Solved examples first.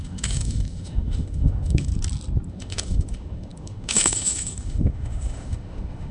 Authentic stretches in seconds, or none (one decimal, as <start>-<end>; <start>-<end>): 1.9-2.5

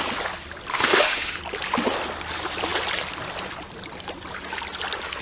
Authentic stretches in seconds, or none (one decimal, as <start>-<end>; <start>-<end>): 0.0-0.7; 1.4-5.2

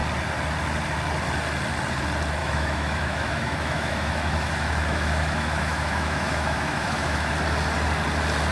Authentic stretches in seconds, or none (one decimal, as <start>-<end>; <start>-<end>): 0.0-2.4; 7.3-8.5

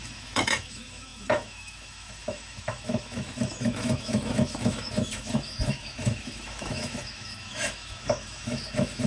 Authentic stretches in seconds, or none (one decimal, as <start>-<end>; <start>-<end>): none

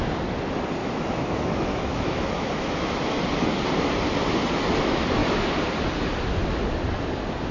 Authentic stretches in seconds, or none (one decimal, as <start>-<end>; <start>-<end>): 0.0-0.8; 3.2-7.5